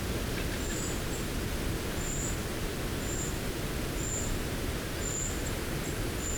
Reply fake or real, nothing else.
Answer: real